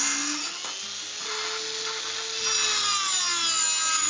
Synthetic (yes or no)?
no